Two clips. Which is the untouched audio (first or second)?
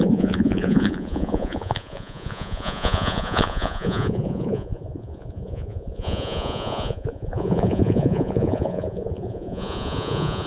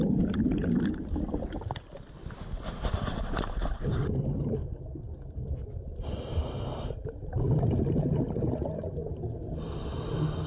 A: second